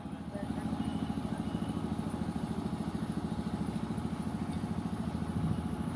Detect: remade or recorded recorded